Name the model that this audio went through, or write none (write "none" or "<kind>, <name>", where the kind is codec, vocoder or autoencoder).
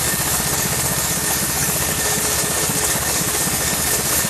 codec, DAC